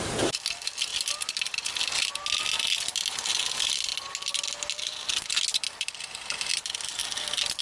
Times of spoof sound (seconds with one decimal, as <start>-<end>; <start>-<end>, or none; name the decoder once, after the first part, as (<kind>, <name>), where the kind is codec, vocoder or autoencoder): none